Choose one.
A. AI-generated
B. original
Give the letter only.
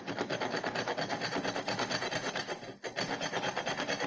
B